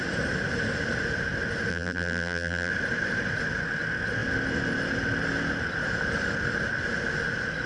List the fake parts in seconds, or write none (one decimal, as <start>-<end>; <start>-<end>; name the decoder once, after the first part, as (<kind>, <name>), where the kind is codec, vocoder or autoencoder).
1.7-2.7 (vocoder, BigVGAN v2)